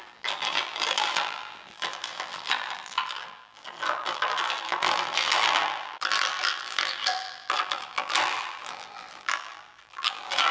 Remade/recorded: remade